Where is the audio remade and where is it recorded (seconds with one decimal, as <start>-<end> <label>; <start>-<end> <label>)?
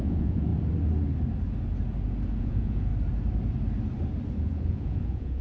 0.0-0.5 remade; 0.5-2.4 recorded; 2.4-2.9 remade; 2.9-4.4 recorded; 4.4-5.4 remade